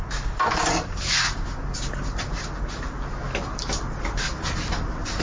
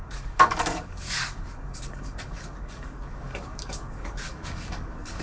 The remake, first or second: second